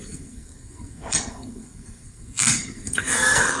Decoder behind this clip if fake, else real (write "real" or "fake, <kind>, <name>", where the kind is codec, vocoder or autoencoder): fake, codec, SNAC